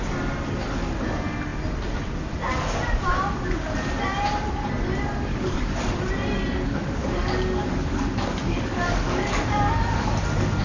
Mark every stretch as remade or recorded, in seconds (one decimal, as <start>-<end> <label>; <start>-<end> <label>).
0.0-5.3 recorded; 5.3-5.9 remade; 5.9-7.0 recorded; 7.0-10.1 remade; 10.1-10.6 recorded